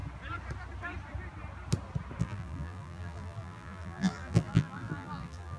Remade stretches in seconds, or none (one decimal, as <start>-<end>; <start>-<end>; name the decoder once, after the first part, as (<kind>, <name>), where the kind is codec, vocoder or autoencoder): 2.2-5.6 (vocoder, BigVGAN v2)